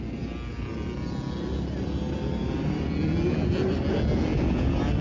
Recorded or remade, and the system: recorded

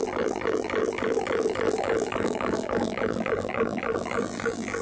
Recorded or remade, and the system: remade, vocoder, BigVGAN v2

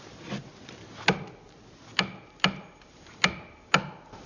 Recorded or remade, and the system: recorded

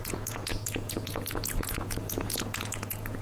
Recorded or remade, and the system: remade, vocoder, Vocos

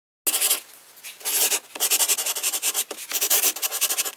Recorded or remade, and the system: recorded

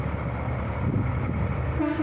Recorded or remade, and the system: recorded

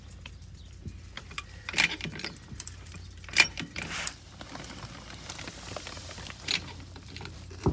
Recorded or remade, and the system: remade, vocoder, BigVGAN v2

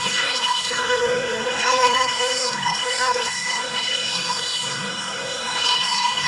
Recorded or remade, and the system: remade, codec, SNAC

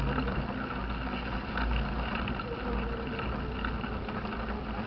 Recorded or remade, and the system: recorded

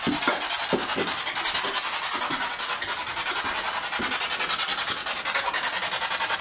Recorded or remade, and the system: recorded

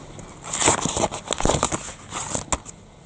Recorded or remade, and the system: recorded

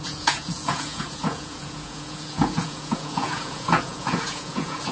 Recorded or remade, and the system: remade, vocoder, Vocos